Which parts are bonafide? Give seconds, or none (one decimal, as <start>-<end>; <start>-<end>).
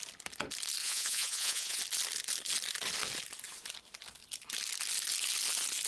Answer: 0.0-0.8; 1.8-5.9